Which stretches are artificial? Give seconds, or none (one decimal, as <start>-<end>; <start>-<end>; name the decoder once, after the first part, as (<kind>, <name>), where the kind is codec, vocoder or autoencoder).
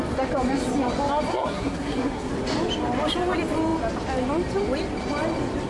1.3-2.3 (codec, SNAC)